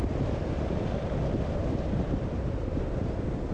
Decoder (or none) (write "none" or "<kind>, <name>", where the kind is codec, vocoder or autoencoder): none